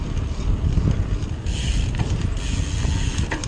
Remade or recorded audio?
recorded